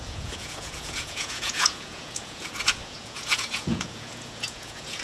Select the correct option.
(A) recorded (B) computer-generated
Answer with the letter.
B